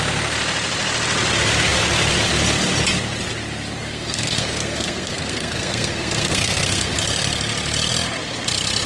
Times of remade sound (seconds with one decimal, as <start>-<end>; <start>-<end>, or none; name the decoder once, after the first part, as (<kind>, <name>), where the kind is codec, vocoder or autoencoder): 3.8-6.9 (codec, SNAC)